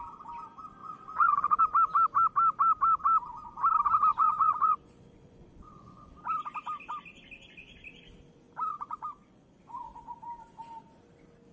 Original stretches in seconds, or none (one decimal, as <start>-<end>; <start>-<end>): 0.0-0.8; 1.6-4.1; 6.1-8.7; 9.6-11.5